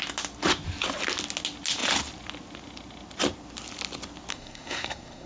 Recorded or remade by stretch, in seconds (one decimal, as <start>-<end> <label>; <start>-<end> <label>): 0.0-4.3 recorded; 4.3-5.3 remade